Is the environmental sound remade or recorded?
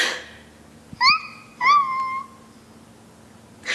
recorded